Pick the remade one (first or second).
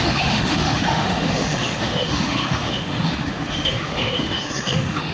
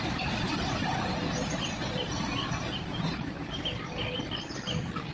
first